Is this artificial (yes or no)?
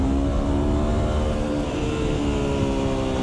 no